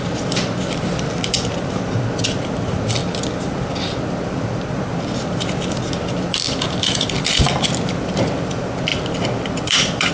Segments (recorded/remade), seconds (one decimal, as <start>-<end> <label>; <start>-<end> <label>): 0.0-10.1 remade